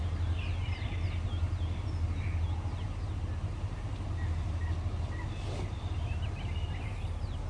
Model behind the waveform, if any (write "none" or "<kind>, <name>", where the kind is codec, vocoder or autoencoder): vocoder, BigVGAN v2